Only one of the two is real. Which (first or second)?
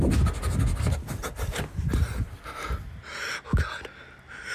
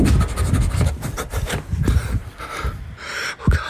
first